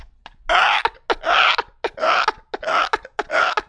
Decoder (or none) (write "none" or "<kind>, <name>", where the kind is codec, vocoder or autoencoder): none